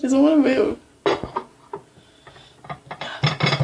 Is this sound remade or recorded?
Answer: recorded